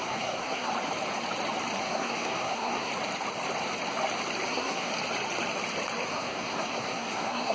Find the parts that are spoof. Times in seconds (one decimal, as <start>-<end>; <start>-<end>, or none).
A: 0.0-0.7; 1.8-2.9; 4.5-4.9; 6.1-7.5